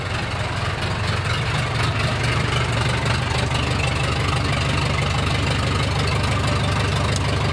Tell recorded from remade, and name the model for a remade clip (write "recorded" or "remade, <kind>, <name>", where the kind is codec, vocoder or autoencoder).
recorded